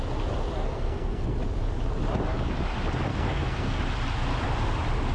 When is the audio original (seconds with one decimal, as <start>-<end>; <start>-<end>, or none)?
0.0-0.6; 1.4-3.1; 3.8-5.1